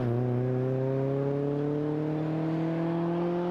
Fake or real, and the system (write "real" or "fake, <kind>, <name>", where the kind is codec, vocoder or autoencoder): real